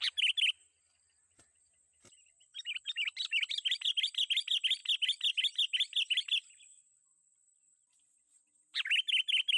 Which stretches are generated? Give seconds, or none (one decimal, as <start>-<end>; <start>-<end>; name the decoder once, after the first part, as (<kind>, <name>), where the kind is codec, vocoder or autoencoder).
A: none